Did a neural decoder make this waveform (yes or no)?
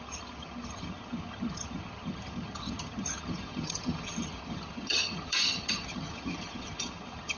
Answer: yes